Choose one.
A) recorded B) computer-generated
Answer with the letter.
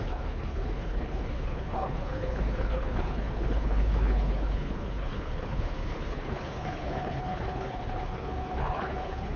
B